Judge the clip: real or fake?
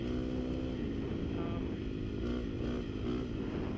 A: real